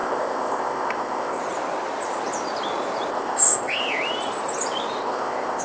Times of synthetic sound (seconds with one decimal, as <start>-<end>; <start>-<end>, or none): 0.0-1.4; 3.1-3.8; 5.0-5.6